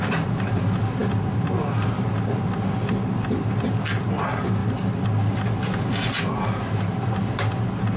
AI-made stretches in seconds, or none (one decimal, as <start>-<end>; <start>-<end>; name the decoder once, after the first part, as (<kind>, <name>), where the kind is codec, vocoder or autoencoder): none